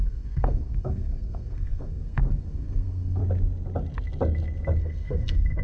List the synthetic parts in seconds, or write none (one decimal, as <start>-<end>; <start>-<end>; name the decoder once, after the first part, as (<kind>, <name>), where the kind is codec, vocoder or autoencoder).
0.0-3.2 (codec, SNAC); 4.8-5.6